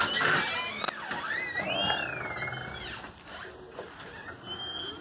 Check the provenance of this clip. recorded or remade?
recorded